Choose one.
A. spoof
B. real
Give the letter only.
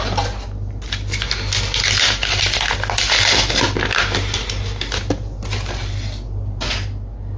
B